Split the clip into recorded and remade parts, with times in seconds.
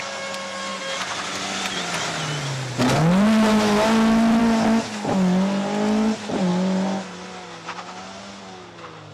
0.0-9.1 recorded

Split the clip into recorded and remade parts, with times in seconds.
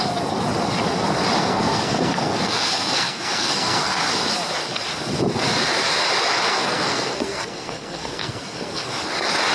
0.0-1.4 recorded; 1.4-4.0 remade; 4.0-6.5 recorded; 6.5-8.9 remade; 8.9-9.5 recorded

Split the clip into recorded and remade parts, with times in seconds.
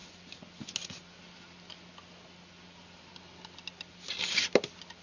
0.0-5.0 recorded